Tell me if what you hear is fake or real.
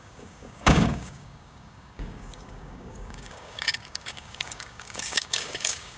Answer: fake